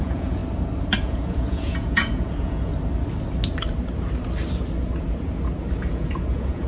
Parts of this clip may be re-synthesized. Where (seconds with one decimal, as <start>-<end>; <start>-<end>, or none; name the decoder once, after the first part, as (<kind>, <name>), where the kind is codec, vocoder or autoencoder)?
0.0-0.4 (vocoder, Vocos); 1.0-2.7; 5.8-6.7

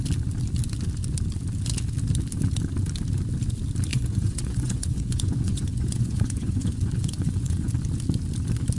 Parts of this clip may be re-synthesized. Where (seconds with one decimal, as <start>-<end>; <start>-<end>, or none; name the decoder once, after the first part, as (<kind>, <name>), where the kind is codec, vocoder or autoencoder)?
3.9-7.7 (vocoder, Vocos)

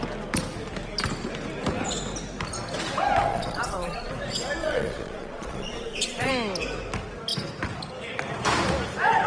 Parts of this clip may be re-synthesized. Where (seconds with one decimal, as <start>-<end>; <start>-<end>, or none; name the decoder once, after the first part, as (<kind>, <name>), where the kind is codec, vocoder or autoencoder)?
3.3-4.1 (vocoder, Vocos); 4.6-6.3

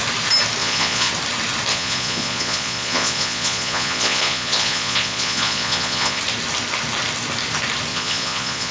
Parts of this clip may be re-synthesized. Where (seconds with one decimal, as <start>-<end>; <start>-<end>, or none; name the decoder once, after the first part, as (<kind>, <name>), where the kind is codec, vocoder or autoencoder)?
0.6-1.1 (vocoder, Vocos); 1.7-6.2; 7.9-8.7

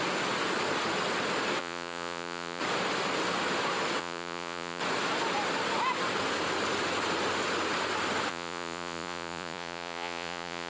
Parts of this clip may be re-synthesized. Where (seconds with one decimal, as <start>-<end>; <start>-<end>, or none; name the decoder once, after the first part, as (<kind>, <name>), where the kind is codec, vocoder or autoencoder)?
1.6-2.6 (vocoder, Vocos); 4.0-4.8; 8.3-10.7

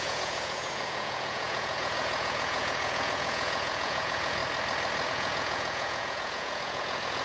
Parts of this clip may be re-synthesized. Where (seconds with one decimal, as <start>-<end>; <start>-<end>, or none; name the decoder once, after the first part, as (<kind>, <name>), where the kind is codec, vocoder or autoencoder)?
0.0-4.4 (vocoder, Vocos); 5.1-7.2

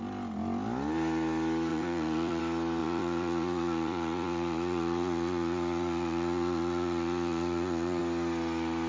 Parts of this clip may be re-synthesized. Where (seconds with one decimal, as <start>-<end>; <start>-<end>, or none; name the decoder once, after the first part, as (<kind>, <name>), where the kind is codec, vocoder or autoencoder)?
1.7-2.4 (vocoder, Vocos); 2.8-8.0